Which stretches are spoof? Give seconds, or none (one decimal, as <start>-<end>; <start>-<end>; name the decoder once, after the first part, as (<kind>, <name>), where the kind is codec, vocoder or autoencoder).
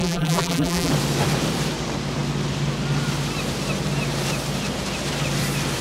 0.0-0.9 (vocoder, BigVGAN v2)